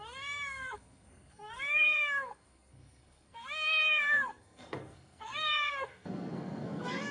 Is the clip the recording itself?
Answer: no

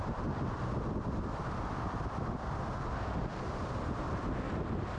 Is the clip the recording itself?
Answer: yes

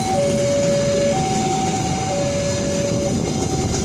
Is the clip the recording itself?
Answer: yes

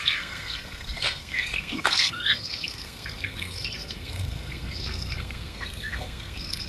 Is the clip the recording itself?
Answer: no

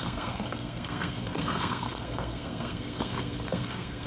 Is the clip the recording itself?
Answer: no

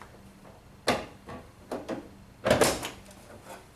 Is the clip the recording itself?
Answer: yes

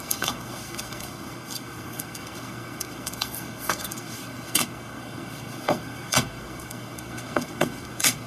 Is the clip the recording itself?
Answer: no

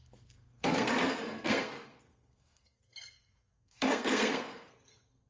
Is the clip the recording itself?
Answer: no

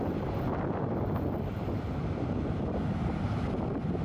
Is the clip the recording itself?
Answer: yes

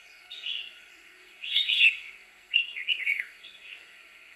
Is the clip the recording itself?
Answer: no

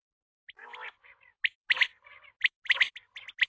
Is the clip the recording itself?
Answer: yes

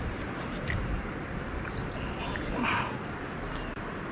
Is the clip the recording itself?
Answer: yes